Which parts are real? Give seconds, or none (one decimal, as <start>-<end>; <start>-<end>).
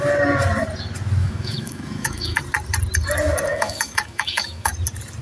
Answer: 0.0-1.2; 2.4-3.5; 4.7-5.2